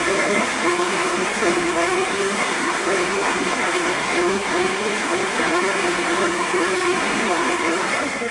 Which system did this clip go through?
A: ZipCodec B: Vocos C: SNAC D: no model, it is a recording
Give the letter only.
C